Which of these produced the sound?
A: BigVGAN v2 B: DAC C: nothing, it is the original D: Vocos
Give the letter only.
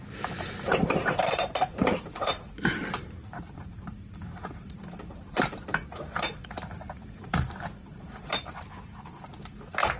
A